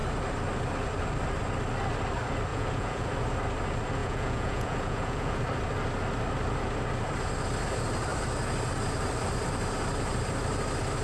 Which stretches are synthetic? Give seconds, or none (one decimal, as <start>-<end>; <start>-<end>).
2.5-3.1; 4.0-5.4

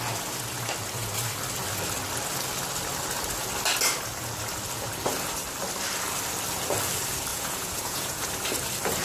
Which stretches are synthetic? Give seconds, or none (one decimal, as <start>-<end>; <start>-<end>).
7.3-8.3

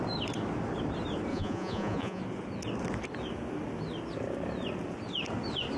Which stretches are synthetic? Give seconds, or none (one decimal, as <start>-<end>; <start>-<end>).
1.3-2.2

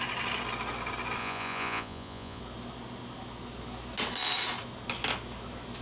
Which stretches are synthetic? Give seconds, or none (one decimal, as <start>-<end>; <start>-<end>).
1.2-2.4

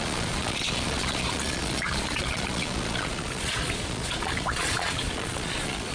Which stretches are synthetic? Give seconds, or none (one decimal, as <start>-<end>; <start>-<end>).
0.0-5.9

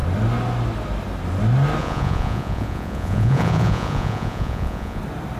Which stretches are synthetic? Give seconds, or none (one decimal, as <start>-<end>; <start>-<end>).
1.8-5.0